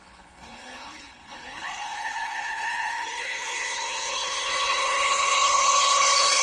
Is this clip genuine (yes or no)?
no